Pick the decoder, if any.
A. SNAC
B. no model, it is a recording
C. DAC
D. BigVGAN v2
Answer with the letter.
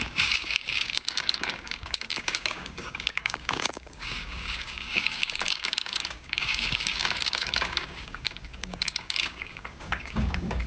C